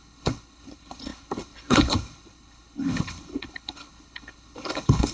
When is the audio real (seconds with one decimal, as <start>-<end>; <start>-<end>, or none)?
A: none